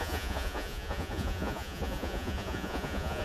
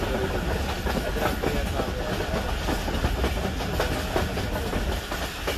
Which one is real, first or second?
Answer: second